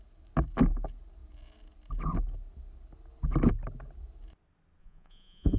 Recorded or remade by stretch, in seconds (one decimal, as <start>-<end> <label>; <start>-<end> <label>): 0.0-4.8 recorded; 4.8-5.6 remade